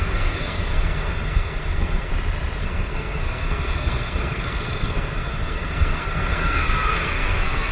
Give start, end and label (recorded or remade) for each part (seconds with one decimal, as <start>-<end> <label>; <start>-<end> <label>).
0.0-2.1 remade; 2.1-2.6 recorded; 2.6-7.7 remade